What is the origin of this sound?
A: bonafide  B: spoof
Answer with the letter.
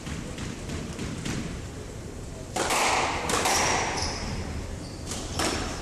B